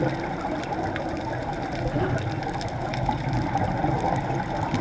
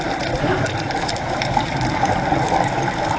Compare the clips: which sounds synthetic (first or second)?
second